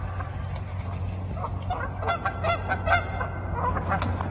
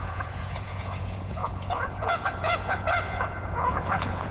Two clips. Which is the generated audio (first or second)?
second